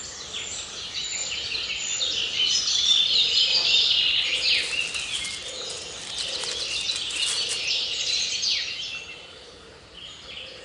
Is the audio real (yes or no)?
yes